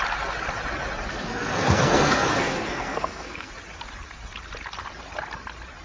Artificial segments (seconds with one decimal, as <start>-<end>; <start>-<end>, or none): 1.1-3.5